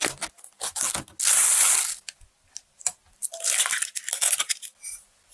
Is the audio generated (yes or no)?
no